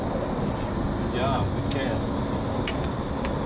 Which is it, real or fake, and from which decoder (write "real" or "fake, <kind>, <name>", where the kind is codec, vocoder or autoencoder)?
real